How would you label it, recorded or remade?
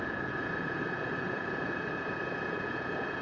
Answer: remade